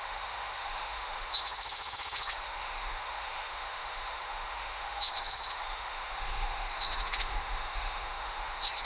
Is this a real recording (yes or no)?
no